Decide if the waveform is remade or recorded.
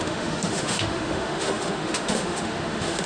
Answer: remade